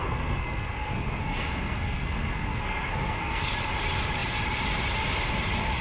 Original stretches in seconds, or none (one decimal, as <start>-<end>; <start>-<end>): 3.5-5.8